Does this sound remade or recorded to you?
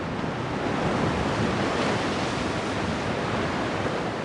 recorded